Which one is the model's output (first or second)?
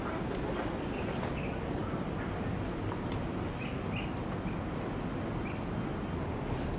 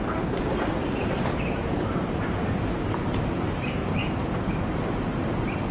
second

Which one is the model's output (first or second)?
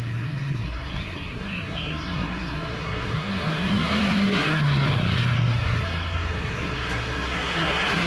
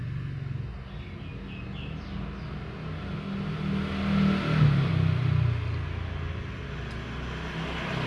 first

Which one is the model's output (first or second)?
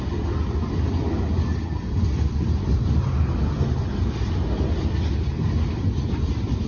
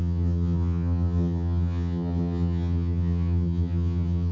second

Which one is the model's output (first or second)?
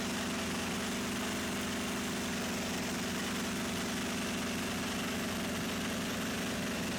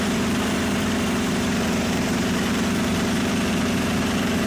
second